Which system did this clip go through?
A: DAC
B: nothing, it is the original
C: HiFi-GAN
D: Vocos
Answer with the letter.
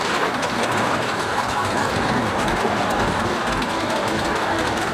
A